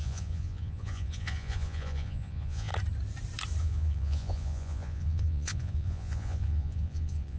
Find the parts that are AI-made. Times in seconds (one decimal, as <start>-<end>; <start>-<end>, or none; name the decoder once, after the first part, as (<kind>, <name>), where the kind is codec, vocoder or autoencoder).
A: 0.0-2.7 (vocoder, Vocos); 3.6-7.4

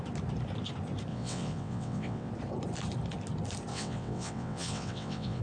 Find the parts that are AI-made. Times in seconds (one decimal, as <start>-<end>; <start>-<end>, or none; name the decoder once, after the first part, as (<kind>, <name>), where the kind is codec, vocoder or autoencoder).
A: 1.1-2.3 (vocoder, WaveNeXt); 3.7-5.4